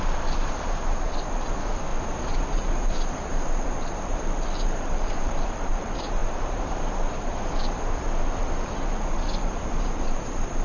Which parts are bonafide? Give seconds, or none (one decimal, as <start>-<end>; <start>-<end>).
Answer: none